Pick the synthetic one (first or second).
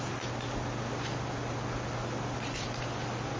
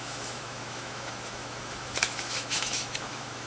second